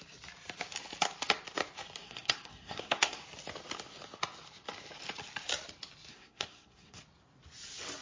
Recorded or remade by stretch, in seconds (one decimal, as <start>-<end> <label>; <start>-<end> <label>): 0.0-2.0 recorded; 2.0-3.2 remade; 3.2-6.1 recorded; 6.1-7.0 remade; 7.0-8.0 recorded